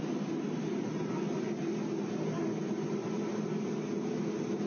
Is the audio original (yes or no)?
yes